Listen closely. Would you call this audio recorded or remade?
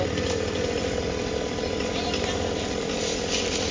recorded